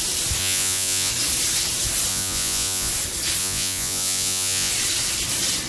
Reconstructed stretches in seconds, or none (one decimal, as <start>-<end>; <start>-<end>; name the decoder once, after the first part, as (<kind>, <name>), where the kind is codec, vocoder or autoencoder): 0.4-1.1 (vocoder, Vocos); 2.1-2.9; 3.4-4.7